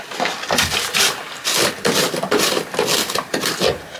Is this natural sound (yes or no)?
yes